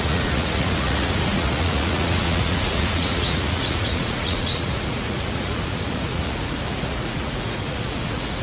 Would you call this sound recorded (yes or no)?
no